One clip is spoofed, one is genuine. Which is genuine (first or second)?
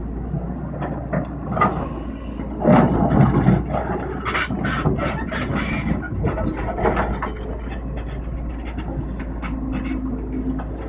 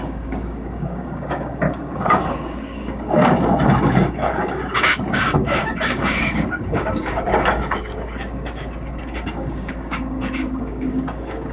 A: first